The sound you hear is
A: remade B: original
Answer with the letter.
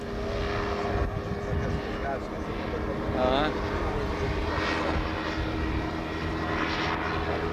B